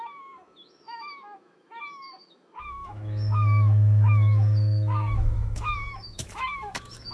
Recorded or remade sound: remade